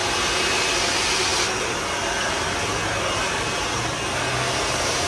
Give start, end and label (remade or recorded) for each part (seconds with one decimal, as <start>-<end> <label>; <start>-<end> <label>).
0.0-5.1 recorded